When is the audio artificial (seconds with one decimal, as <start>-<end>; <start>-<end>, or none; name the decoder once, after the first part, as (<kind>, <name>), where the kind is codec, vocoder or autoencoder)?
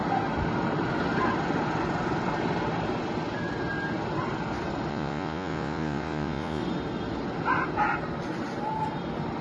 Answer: 4.9-6.6 (vocoder, Vocos)